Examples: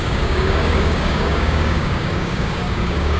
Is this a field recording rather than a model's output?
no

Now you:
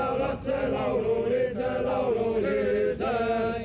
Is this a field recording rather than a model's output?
yes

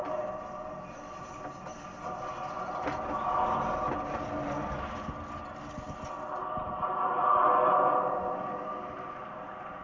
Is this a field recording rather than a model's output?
yes